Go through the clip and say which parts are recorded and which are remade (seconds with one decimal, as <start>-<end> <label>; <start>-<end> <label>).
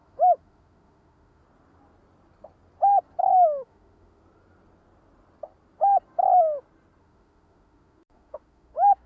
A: 0.0-1.4 remade; 1.4-3.2 recorded; 3.2-4.2 remade; 4.2-7.0 recorded; 7.0-9.1 remade